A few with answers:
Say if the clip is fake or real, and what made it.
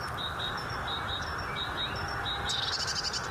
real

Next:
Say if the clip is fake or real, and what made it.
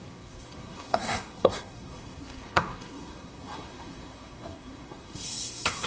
fake, codec, SNAC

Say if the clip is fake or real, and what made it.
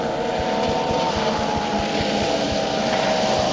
real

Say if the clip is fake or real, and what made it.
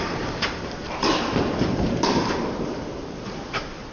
fake, vocoder, BigVGAN v2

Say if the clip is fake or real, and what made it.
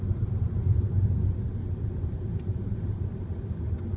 real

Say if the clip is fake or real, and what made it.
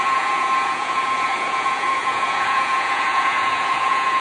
fake, vocoder, Vocos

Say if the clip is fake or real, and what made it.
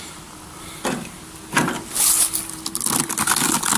real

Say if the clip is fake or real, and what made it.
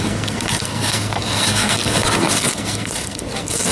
fake, codec, SNAC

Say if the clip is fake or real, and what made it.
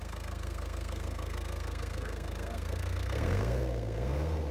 fake, codec, SNAC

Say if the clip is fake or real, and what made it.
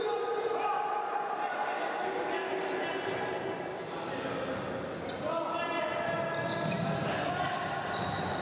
real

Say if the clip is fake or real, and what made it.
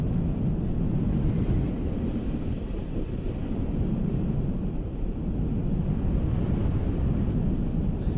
real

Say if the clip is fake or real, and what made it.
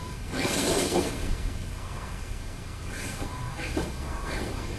fake, codec, SNAC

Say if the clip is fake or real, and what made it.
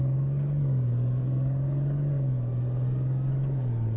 fake, codec, DAC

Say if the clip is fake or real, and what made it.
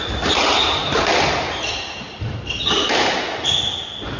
real